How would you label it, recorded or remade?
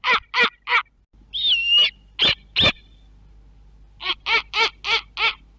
recorded